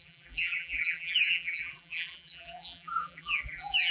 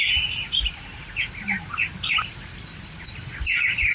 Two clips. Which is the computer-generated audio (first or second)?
first